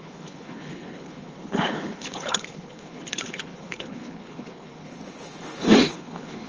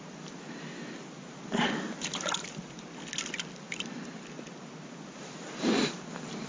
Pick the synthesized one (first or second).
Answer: first